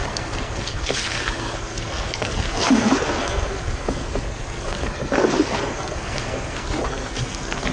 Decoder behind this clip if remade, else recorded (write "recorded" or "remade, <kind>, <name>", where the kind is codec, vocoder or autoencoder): remade, codec, SNAC